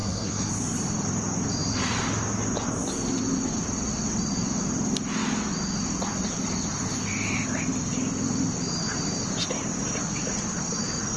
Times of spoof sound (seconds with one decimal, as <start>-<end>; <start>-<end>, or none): 0.0-0.5